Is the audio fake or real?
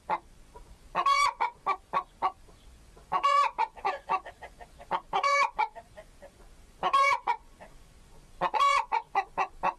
fake